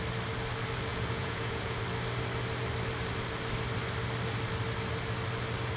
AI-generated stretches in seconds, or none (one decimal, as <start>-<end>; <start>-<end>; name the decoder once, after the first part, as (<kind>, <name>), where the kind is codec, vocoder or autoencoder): 0.9-1.8 (vocoder, Vocos)